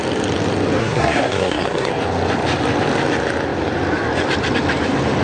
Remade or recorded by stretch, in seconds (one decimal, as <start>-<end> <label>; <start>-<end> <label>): 0.0-0.8 recorded; 0.8-1.9 remade; 1.9-5.2 recorded